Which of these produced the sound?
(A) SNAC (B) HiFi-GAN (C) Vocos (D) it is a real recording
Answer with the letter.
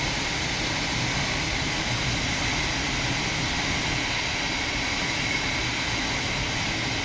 D